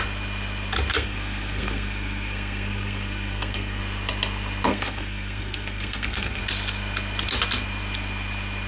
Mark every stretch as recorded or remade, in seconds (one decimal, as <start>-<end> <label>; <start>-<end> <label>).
0.0-0.9 recorded; 0.9-3.8 remade; 3.8-4.7 recorded; 4.7-6.4 remade; 6.4-8.7 recorded